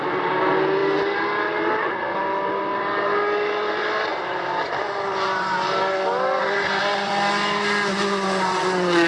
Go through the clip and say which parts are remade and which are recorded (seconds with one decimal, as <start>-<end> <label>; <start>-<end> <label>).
0.0-9.1 recorded